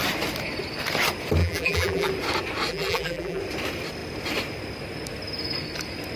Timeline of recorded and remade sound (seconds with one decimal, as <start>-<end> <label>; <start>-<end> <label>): 0.0-1.4 recorded; 1.4-2.1 remade; 2.1-2.7 recorded; 2.7-3.4 remade; 3.4-6.2 recorded